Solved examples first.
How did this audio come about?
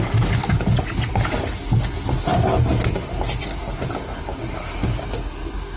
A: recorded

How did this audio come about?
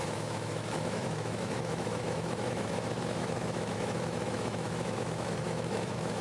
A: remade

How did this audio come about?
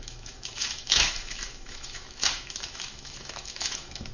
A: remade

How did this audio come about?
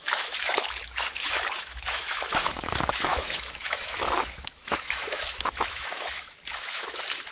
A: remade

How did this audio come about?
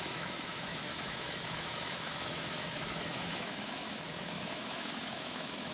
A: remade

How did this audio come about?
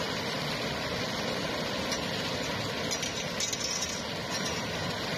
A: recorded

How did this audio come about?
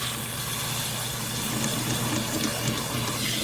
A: recorded